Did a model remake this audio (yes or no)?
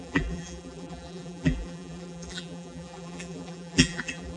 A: yes